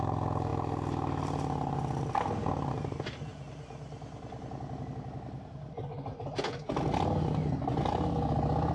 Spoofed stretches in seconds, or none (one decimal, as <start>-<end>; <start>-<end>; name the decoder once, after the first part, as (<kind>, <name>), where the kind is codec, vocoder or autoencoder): none

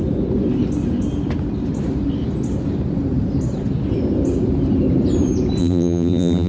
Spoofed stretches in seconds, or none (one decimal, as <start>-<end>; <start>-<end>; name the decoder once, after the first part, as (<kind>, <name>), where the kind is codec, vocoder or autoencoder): 5.6-6.5 (vocoder, BigVGAN v2)

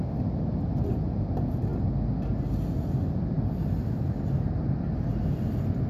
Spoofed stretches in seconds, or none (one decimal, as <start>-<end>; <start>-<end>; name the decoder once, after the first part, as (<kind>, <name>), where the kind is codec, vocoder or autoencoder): none

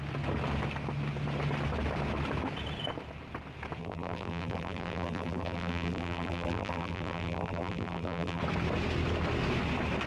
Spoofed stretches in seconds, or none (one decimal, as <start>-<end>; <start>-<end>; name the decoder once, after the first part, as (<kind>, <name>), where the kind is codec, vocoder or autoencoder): 3.8-8.4 (vocoder, BigVGAN v2)

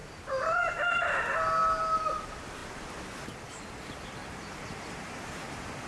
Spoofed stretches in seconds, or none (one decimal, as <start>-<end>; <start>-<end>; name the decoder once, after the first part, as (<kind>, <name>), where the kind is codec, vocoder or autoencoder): 4.2-5.4 (vocoder, BigVGAN v2)

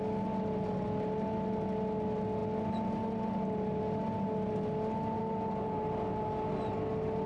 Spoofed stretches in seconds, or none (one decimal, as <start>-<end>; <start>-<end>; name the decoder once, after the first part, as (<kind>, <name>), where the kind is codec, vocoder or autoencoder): none

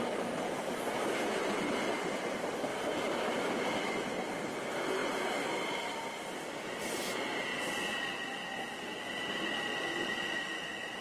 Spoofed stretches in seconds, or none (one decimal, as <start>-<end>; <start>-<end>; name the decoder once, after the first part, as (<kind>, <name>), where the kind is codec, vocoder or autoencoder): 2.7-3.6 (vocoder, BigVGAN v2)

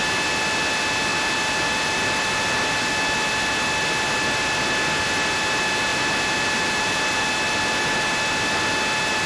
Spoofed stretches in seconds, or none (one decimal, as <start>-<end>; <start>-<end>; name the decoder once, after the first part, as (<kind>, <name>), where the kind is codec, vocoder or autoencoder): 1.1-2.9 (vocoder, BigVGAN v2); 5.9-7.2